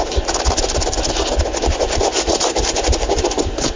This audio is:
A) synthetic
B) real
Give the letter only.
B